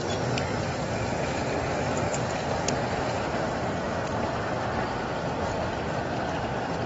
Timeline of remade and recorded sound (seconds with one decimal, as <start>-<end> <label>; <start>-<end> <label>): 0.0-6.9 recorded